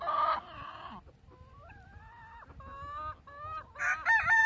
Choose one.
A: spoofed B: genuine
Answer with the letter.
B